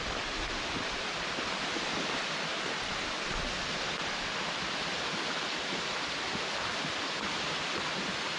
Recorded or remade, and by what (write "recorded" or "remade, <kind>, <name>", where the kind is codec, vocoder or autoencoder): recorded